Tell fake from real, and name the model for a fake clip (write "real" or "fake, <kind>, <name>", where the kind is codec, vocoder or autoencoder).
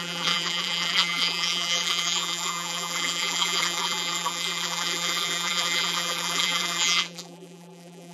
fake, vocoder, BigVGAN v2